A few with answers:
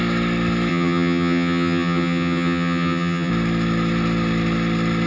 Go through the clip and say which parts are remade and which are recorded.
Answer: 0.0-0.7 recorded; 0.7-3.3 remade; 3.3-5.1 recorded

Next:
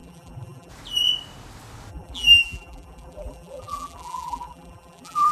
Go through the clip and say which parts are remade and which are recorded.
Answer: 0.0-0.7 remade; 0.7-1.9 recorded; 1.9-5.3 remade

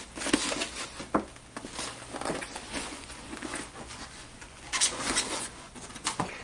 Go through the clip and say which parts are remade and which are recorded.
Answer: 0.0-2.5 recorded; 2.5-6.4 remade

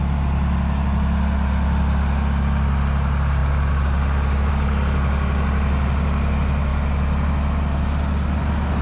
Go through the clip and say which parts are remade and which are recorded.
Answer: 0.0-8.8 recorded

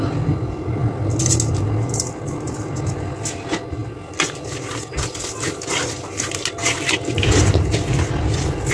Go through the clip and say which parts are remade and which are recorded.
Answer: 0.0-8.7 recorded

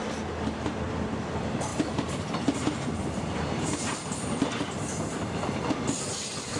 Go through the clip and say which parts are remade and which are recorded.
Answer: 0.0-1.7 remade; 1.7-3.1 recorded; 3.1-4.9 remade; 4.9-6.1 recorded; 6.1-6.6 remade

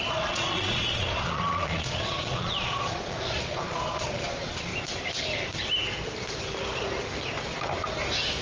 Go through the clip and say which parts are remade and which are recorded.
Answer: 0.0-4.7 remade; 4.7-8.4 recorded

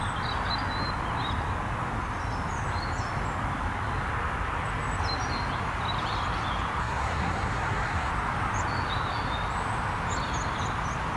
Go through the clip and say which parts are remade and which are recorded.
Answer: 0.0-6.8 recorded; 6.8-8.1 remade; 8.1-11.2 recorded